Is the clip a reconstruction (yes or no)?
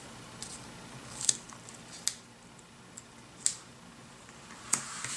no